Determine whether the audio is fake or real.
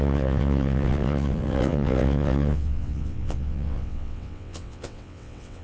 fake